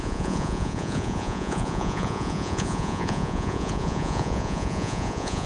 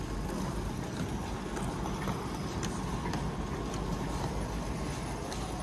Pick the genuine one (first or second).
second